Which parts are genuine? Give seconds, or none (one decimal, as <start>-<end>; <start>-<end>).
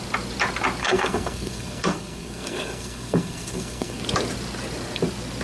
0.0-0.8; 4.0-5.4